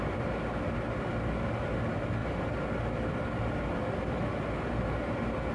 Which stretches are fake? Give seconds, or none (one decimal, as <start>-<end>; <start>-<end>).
2.2-4.7